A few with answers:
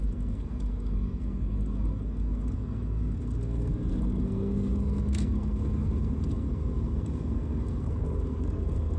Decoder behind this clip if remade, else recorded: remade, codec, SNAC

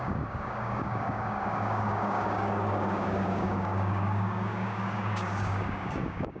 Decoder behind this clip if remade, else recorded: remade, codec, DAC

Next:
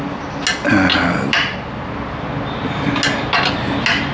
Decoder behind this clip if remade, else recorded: recorded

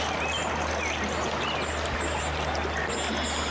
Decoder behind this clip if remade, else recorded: recorded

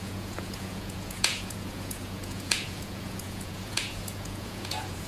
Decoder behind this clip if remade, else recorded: remade, vocoder, Vocos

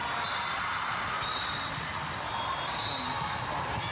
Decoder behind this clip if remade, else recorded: recorded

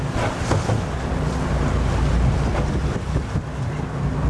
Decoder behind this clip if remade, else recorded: recorded